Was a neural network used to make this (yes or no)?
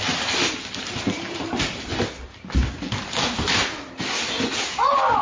no